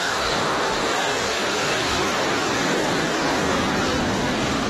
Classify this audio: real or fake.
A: fake